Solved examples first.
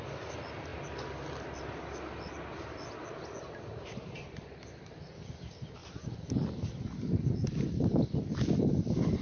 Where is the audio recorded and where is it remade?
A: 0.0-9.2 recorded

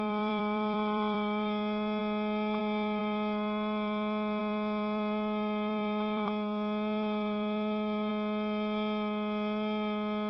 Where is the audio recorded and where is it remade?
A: 0.0-2.0 remade; 2.0-2.6 recorded; 2.6-8.1 remade; 8.1-10.3 recorded